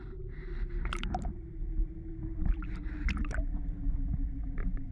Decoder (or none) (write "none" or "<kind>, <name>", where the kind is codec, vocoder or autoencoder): vocoder, BigVGAN v2